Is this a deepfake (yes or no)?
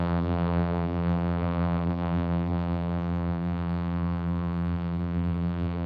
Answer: yes